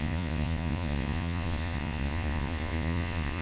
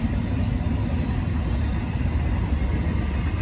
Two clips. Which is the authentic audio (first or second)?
second